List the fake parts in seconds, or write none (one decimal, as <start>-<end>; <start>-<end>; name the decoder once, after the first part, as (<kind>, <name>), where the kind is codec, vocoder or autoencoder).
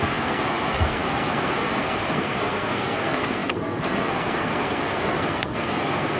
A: 0.0-6.2 (codec, SNAC)